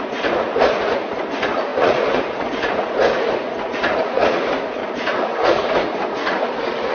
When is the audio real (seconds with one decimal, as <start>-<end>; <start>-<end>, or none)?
none